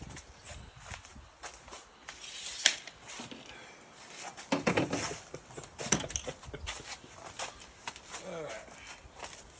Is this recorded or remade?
recorded